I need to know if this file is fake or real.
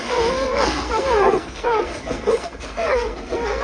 fake